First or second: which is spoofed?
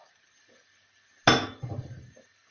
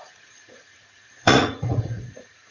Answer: second